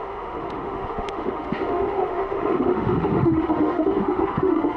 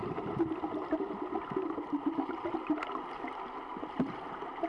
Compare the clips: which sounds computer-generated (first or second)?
first